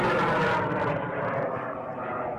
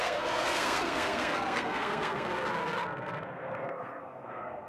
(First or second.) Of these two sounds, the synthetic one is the second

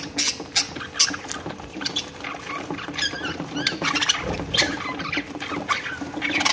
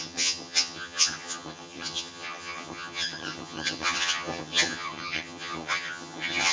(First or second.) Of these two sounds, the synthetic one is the second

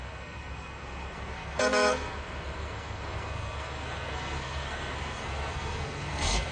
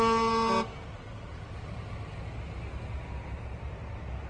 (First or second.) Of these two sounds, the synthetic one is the first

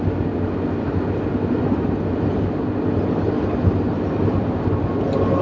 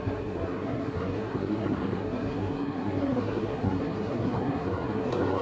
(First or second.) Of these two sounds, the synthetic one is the second